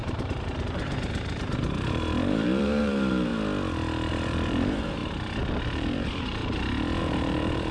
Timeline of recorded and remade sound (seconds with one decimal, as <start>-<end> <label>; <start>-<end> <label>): 0.0-3.3 remade; 3.3-4.1 recorded; 4.1-5.0 remade; 5.0-5.6 recorded; 5.6-6.4 remade; 6.4-7.0 recorded; 7.0-7.7 remade